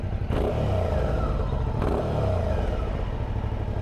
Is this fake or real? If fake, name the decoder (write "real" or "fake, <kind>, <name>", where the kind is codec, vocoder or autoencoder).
real